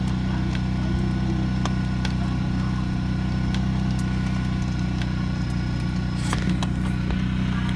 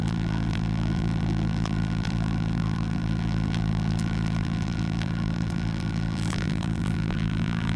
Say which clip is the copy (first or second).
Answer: second